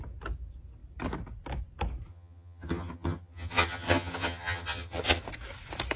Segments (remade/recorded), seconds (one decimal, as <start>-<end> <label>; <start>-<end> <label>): 0.0-2.1 recorded; 2.1-5.2 remade; 5.2-6.0 recorded